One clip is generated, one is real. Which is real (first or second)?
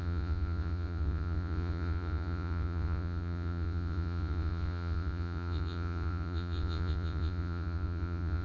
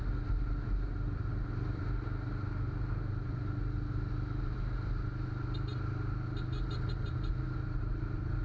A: second